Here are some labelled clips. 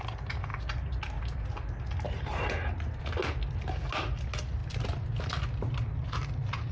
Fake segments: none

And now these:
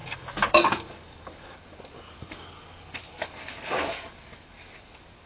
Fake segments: 0.0-5.3 (codec, DAC)

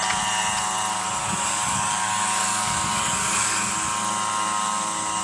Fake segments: 1.2-3.7 (codec, DAC)

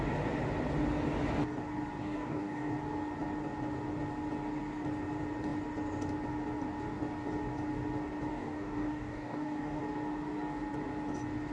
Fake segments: 2.0-2.7 (codec, DAC); 8.3-9.8